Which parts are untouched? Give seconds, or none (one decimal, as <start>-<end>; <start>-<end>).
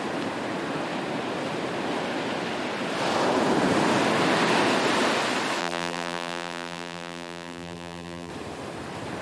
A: 0.0-5.6; 8.3-9.2